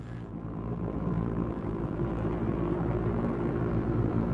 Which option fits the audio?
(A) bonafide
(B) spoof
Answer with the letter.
B